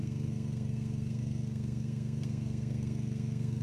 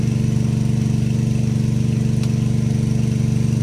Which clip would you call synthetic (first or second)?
first